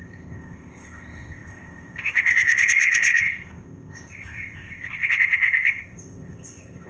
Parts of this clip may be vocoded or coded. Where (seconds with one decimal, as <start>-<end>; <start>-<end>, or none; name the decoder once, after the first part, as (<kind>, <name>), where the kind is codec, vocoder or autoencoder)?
0.0-6.9 (codec, ZipCodec)